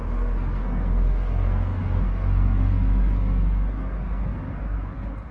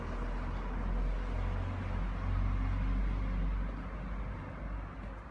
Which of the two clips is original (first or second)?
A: second